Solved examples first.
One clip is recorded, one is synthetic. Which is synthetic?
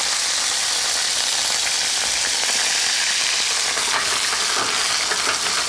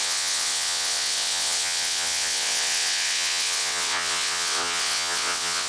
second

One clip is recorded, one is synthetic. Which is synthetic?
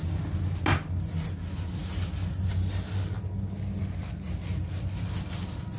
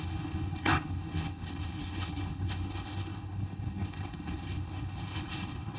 second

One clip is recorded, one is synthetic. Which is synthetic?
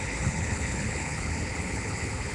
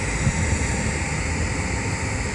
first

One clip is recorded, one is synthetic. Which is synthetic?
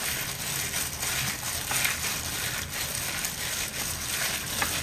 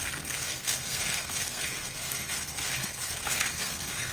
second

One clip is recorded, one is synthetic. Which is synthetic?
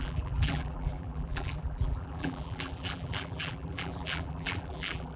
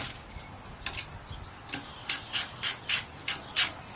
first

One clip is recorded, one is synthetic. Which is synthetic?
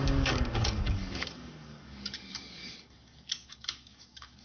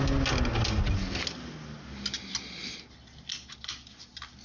first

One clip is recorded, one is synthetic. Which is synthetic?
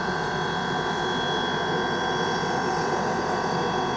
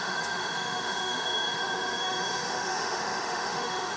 second